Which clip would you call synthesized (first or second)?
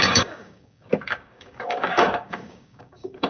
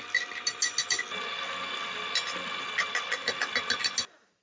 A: first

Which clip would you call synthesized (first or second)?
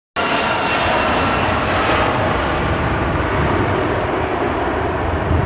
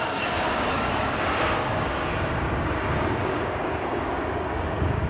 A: second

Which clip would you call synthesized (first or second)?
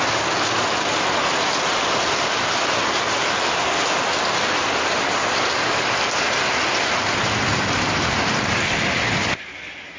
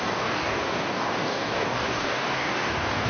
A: second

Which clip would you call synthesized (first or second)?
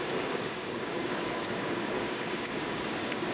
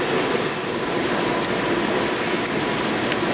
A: first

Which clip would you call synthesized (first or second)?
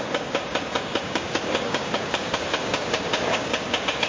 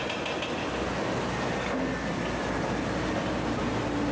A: first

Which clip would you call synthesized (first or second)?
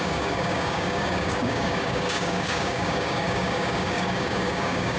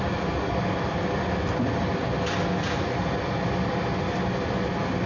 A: first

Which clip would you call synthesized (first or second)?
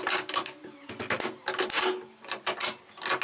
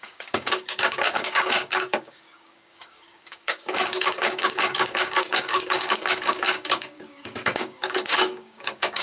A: second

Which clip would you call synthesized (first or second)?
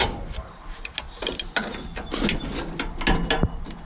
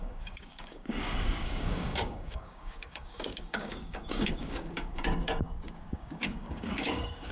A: second